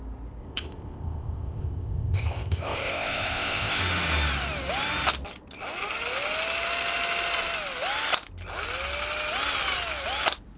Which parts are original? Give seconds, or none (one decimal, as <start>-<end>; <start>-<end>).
0.0-0.4; 3.8-10.6